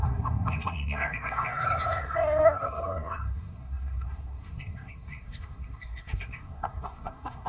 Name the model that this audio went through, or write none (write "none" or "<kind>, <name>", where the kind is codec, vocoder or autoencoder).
codec, SNAC